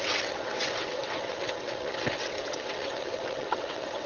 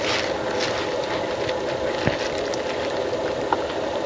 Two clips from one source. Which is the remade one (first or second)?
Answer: first